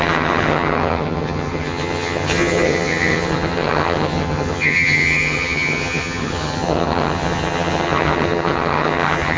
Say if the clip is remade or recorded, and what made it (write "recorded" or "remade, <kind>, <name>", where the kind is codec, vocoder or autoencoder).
remade, vocoder, HiFi-GAN